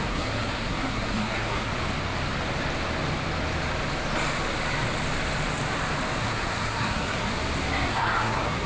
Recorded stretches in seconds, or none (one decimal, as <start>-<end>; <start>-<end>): 1.7-6.2; 7.3-7.9